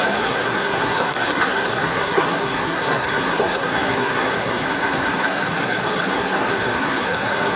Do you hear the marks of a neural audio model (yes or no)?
yes